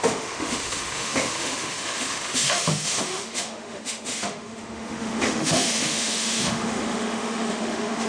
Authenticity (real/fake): fake